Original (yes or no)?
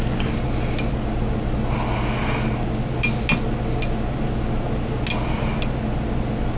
yes